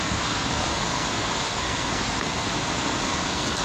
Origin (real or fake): fake